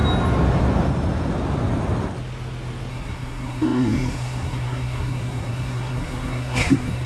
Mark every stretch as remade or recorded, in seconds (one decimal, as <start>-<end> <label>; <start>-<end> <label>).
0.0-2.9 recorded; 2.9-7.1 remade